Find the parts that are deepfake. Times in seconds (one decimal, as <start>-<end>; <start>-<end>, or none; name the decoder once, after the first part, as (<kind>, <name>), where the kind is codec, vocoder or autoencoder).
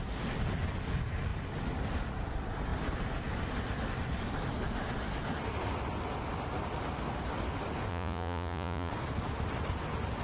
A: 7.9-8.9 (vocoder, Vocos)